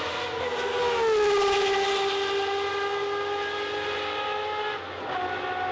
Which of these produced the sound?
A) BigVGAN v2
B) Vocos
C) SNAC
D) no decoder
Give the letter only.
D